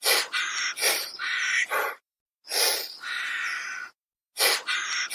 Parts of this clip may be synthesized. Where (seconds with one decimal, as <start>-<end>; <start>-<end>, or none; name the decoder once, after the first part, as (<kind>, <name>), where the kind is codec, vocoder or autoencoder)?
0.8-1.5 (vocoder, BigVGAN v2)